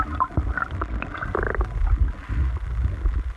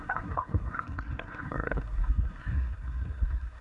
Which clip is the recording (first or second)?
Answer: first